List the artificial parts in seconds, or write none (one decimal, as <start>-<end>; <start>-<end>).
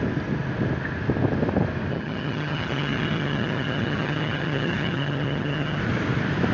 1.9-5.8